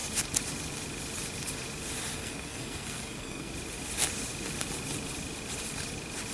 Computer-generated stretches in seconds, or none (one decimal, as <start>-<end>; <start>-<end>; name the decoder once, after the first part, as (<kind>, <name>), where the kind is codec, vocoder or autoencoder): 2.1-3.5 (codec, SNAC)